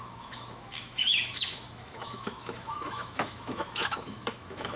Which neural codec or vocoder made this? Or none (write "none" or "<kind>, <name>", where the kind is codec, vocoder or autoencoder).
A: autoencoder, DAC-VAE